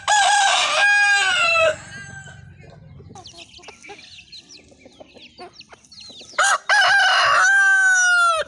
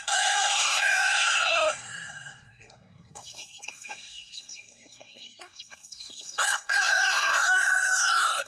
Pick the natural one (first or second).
first